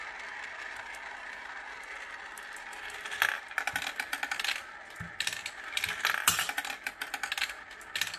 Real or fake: real